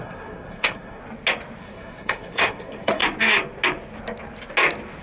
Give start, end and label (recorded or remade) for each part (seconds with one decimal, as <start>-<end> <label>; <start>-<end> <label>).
0.0-1.0 remade; 1.0-1.6 recorded; 1.6-3.0 remade; 3.0-5.0 recorded

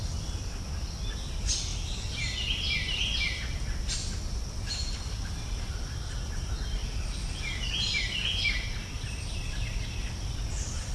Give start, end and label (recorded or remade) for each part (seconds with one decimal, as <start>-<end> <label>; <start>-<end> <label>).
0.0-10.9 recorded

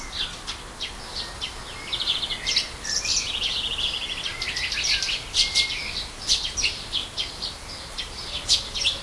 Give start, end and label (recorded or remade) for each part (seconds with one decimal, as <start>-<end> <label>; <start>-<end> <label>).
0.0-9.0 remade